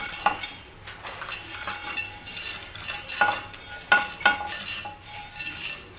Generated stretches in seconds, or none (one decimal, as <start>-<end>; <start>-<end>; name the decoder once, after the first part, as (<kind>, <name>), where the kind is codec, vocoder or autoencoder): none